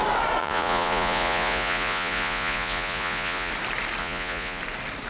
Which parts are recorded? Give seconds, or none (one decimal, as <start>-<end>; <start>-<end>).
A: 0.0-0.4; 3.5-4.0; 4.6-5.1